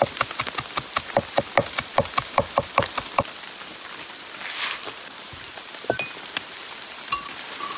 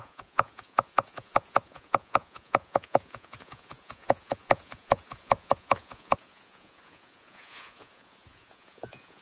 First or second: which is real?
first